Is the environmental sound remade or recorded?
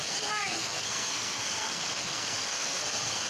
remade